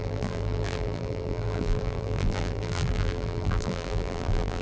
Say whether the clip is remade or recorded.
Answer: remade